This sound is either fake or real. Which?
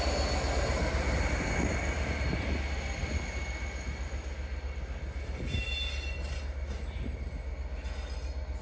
real